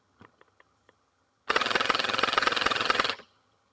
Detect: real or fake fake